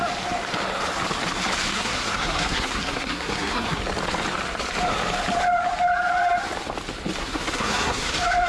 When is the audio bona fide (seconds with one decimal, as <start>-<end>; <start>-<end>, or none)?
0.0-1.7; 3.8-7.2; 8.1-8.5